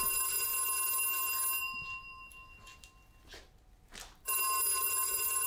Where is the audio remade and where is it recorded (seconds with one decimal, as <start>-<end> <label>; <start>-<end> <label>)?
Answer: 0.0-0.5 remade; 0.5-1.6 recorded; 1.6-2.7 remade; 2.7-4.8 recorded; 4.8-5.5 remade